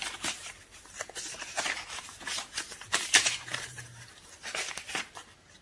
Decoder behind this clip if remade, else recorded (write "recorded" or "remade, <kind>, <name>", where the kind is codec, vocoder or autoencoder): remade, vocoder, BigVGAN v2